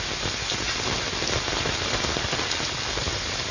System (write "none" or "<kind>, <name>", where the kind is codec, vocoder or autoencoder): none